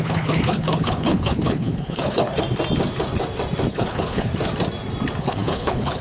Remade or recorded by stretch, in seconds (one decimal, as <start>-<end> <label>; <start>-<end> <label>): 0.0-2.3 remade; 2.3-3.7 recorded; 3.7-4.3 remade; 4.3-5.2 recorded; 5.2-6.0 remade